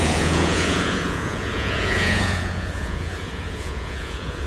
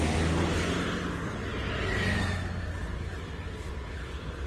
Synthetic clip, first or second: first